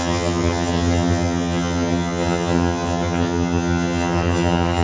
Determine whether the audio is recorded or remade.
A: remade